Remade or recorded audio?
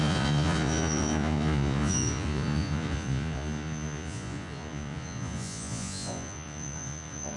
remade